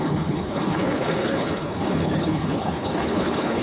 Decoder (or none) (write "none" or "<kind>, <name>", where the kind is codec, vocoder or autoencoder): codec, HILCodec